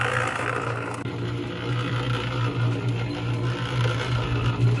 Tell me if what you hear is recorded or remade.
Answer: recorded